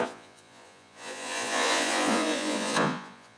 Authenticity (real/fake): fake